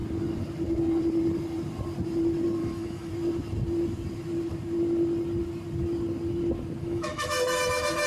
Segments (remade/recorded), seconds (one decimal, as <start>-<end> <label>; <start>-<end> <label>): 0.0-2.6 recorded; 2.6-3.1 remade; 3.1-6.8 recorded; 6.8-8.1 remade